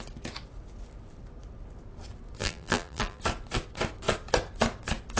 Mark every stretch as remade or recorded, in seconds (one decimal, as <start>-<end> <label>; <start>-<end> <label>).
0.0-2.4 recorded; 2.4-3.2 remade; 3.2-5.2 recorded